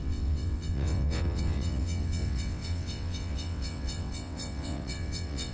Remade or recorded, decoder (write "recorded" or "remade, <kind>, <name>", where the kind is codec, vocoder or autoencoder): remade, vocoder, WaveNeXt